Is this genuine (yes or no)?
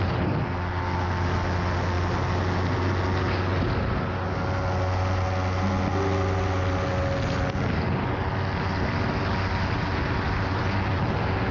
yes